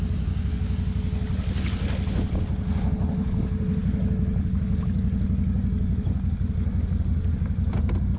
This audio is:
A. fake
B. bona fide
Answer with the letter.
B